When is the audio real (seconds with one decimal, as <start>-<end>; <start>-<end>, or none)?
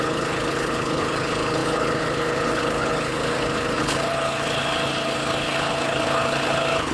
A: none